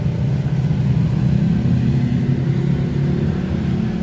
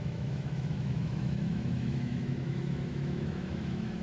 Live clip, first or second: first